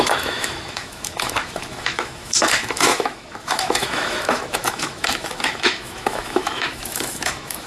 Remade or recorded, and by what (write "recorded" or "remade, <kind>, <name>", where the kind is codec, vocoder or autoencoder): remade, autoencoder, DAC-VAE